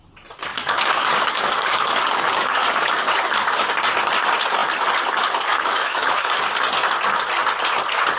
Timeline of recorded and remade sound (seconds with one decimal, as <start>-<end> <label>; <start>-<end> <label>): 0.0-0.5 recorded; 0.5-3.3 remade; 3.3-5.5 recorded; 5.5-6.4 remade; 6.4-8.2 recorded